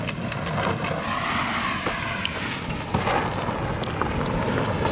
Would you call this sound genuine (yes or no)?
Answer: yes